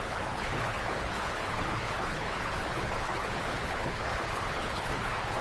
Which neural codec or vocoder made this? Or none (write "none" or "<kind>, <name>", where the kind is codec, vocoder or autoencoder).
codec, HILCodec